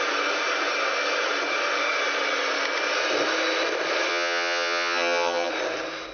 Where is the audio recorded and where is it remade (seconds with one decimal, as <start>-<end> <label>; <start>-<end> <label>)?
0.0-4.1 recorded; 4.1-5.5 remade; 5.5-6.1 recorded